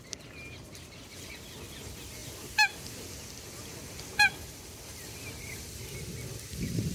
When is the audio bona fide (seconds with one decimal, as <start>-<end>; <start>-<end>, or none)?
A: 0.0-3.7; 5.7-6.9